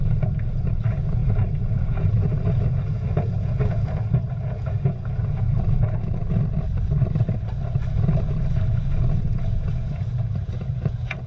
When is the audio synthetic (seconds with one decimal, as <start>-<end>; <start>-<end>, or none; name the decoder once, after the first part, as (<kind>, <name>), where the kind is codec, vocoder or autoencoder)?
0.0-6.2 (vocoder, Vocos); 8.7-11.3